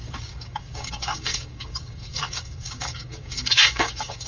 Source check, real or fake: fake